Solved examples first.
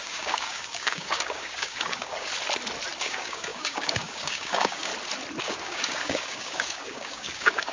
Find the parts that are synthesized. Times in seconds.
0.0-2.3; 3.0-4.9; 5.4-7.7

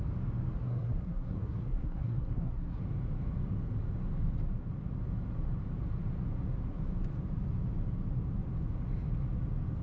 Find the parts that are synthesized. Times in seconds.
0.6-2.8